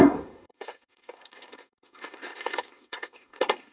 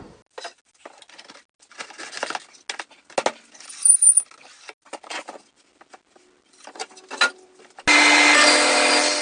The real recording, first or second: second